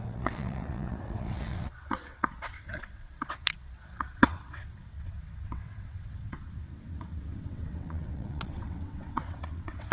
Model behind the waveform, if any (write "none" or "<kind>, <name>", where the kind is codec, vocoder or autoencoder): vocoder, WaveNeXt